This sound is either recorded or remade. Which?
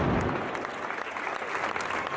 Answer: recorded